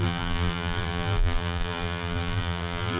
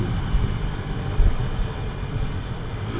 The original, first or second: second